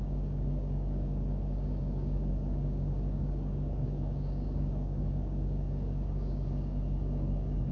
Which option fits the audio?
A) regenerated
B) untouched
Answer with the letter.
A